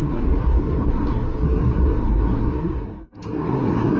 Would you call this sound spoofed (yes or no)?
yes